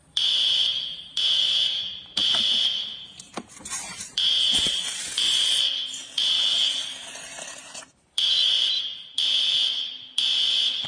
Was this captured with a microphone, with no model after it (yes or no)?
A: no